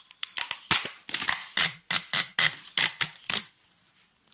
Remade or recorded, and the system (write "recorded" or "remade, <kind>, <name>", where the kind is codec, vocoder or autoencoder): recorded